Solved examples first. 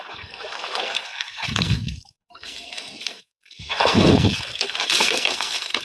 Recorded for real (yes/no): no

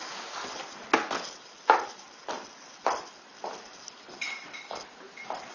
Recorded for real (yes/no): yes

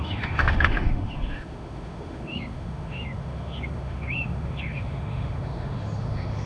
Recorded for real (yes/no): no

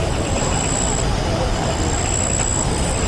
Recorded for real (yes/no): yes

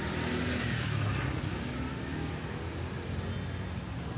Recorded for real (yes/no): yes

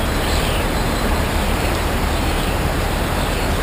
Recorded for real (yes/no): no